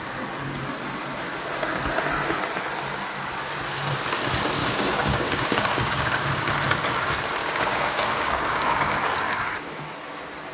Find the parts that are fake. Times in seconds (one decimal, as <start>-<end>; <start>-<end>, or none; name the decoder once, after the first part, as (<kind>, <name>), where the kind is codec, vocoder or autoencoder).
4.6-6.5 (codec, DAC); 7.4-9.5